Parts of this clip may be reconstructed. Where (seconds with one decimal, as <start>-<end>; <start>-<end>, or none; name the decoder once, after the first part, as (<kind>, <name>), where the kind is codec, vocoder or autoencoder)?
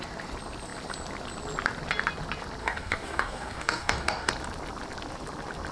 2.6-4.3 (codec, DAC)